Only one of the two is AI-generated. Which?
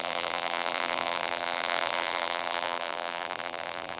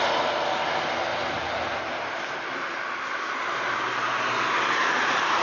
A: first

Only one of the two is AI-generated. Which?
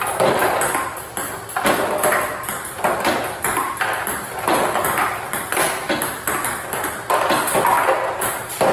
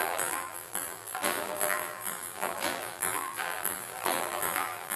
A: second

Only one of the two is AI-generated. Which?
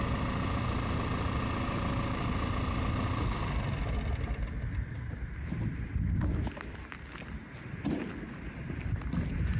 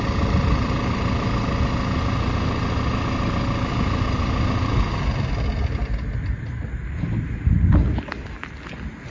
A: first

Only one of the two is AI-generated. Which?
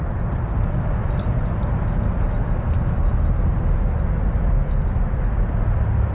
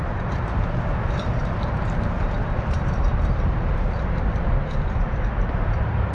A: second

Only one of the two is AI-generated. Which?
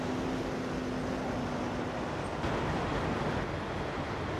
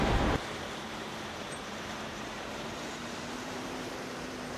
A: second